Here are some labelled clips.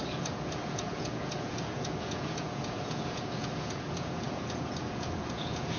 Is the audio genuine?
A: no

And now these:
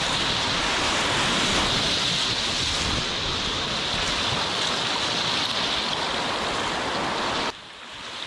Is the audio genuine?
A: yes